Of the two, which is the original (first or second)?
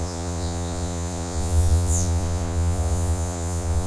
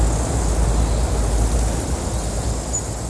second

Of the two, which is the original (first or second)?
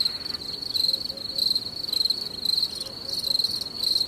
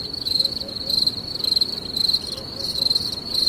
first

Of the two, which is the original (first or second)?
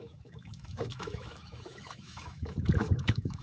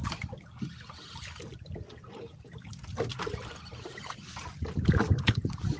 second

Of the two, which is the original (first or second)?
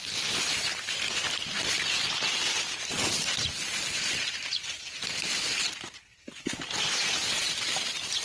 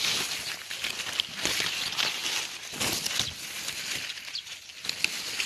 second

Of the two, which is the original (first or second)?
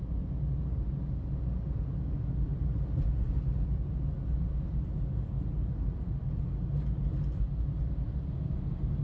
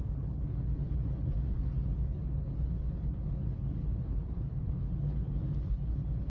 first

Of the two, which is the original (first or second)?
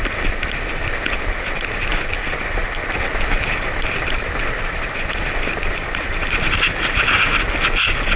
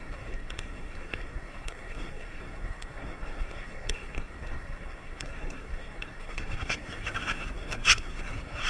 first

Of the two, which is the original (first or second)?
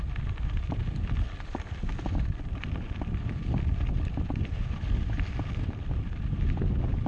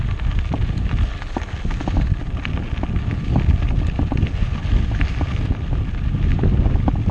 second